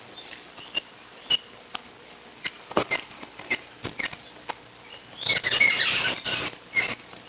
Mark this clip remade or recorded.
recorded